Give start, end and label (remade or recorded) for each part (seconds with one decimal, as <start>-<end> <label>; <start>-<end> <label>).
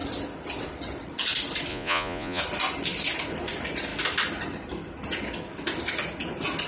0.0-1.7 recorded; 1.7-2.4 remade; 2.4-6.7 recorded